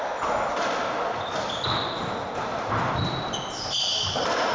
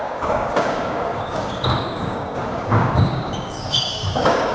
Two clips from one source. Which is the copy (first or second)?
second